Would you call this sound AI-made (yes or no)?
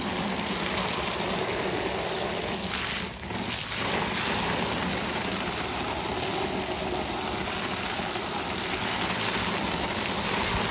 no